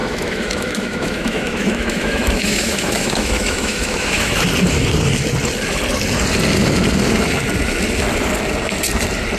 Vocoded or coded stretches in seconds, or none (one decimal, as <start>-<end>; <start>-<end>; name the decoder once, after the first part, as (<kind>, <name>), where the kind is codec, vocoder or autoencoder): 0.0-4.4 (autoencoder, DAC-VAE)